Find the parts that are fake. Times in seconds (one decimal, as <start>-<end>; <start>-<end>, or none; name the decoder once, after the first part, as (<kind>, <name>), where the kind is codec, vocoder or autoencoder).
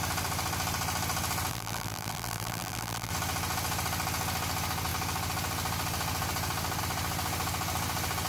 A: 1.5-3.1 (vocoder, BigVGAN v2)